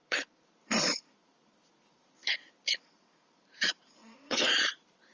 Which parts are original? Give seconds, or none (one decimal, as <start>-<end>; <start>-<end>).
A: 2.2-2.8